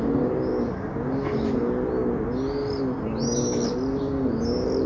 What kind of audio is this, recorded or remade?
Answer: recorded